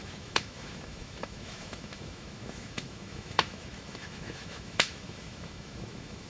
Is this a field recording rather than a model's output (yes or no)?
no